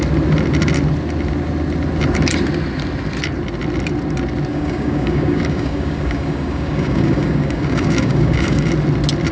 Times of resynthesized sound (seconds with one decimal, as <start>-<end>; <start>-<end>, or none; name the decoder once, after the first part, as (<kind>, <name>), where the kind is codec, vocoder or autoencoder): 4.5-8.7 (codec, DAC)